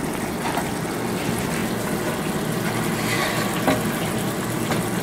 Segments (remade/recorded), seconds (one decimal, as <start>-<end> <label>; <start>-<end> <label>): 0.0-5.0 recorded